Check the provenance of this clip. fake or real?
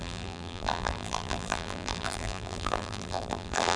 fake